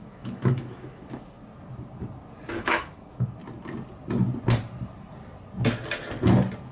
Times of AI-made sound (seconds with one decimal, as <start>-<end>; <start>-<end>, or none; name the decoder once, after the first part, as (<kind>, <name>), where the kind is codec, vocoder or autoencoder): 0.0-1.4 (autoencoder, DAC-VAE); 2.6-3.4